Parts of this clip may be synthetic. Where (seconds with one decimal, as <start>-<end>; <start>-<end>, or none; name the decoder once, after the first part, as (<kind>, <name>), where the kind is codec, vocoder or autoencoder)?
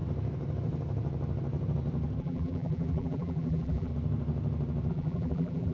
2.2-3.9 (vocoder, BigVGAN v2); 4.9-5.7